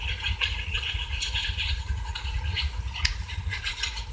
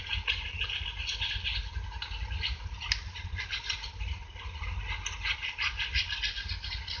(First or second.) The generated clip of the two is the first